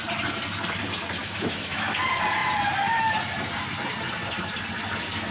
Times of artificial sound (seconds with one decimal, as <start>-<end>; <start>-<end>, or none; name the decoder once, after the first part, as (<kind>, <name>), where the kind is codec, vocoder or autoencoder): 1.2-1.9 (autoencoder, DAC-VAE)